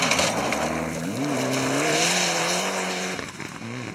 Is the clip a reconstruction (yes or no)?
no